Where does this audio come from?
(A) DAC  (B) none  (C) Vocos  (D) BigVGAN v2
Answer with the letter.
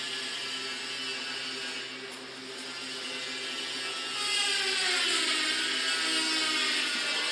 B